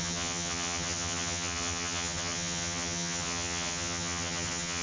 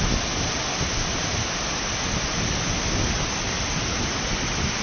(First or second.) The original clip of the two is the second